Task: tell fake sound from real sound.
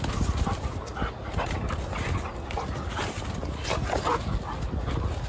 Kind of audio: real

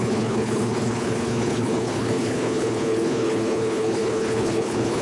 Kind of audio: fake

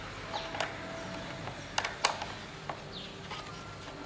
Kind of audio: real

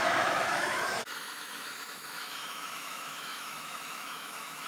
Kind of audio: fake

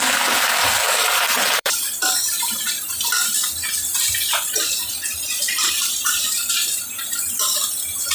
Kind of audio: fake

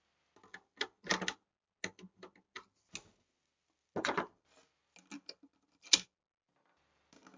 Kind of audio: real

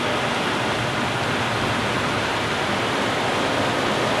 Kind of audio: real